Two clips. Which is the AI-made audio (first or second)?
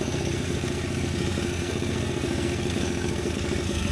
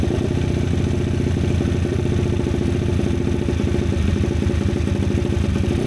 first